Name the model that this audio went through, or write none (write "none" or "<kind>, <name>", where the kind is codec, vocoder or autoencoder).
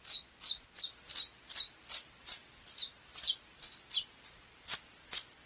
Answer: none